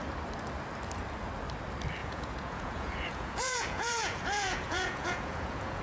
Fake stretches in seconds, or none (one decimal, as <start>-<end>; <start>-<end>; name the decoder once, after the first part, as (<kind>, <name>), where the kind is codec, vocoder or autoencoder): 2.0-5.8 (vocoder, Vocos)